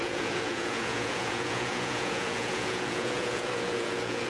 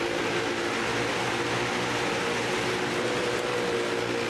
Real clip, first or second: second